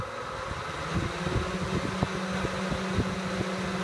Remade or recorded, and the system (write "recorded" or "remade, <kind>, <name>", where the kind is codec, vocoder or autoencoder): recorded